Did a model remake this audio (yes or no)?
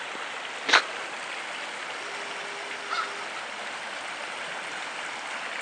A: no